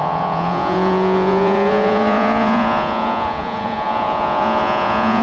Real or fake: fake